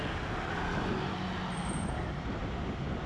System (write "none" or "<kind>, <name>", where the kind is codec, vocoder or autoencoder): none